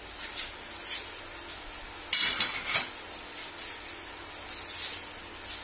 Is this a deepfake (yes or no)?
no